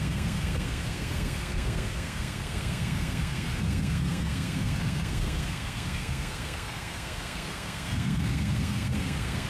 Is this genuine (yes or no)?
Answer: no